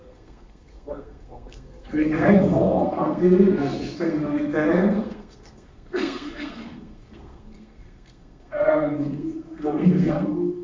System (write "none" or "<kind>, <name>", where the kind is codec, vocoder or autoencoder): codec, SNAC